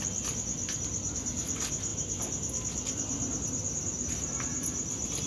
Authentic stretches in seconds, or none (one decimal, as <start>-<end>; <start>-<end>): 0.0-5.3